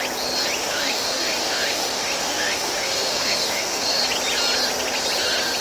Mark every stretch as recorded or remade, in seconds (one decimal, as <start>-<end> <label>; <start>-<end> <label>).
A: 0.0-0.6 recorded; 0.6-4.0 remade; 4.0-5.6 recorded